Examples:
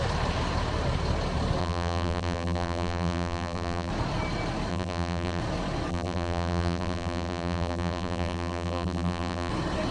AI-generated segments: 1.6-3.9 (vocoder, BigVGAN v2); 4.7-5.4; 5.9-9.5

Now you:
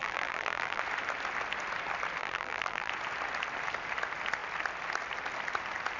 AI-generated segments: 0.0-0.8 (vocoder, BigVGAN v2); 2.2-2.9

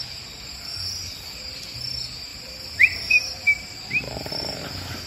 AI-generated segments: 2.3-4.1 (vocoder, BigVGAN v2)

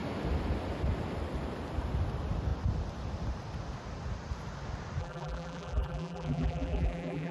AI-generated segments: 5.0-7.3 (vocoder, BigVGAN v2)

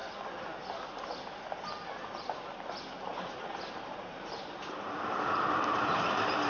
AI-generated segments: 3.1-6.5 (vocoder, BigVGAN v2)

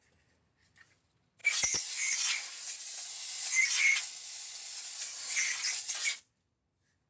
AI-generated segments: none